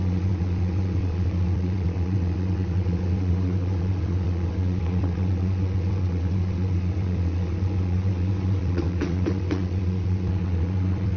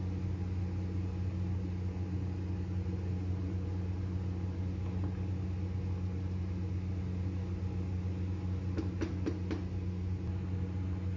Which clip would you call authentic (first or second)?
second